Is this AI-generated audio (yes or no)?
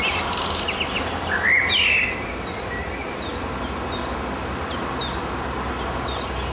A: no